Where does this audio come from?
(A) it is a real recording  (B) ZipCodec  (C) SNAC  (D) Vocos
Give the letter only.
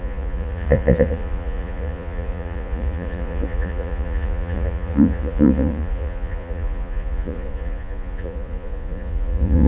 D